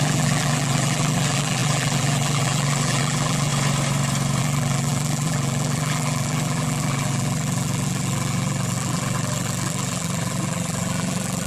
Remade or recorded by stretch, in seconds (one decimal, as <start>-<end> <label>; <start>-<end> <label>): 0.0-3.5 remade; 3.5-4.4 recorded; 4.4-11.5 remade

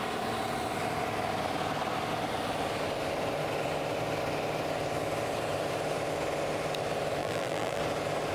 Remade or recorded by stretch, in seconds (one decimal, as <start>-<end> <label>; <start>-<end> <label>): 0.0-7.2 recorded; 7.2-7.8 remade; 7.8-8.3 recorded

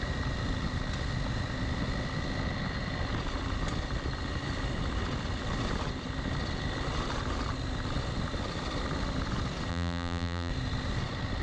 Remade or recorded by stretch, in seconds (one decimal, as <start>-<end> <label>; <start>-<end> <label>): 0.0-9.7 recorded; 9.7-10.5 remade; 10.5-11.4 recorded

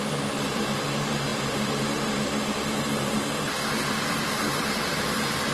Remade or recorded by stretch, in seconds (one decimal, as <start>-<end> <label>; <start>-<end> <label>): 0.0-5.5 remade